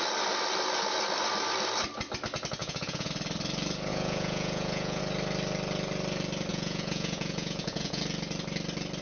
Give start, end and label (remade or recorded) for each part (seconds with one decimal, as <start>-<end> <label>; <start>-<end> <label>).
0.0-2.6 recorded; 2.6-3.1 remade; 3.1-3.9 recorded; 3.9-5.0 remade; 5.0-6.5 recorded; 6.5-8.0 remade; 8.0-9.0 recorded